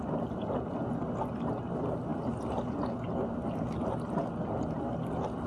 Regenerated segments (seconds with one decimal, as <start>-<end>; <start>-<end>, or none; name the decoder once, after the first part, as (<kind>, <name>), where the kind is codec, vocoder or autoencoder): none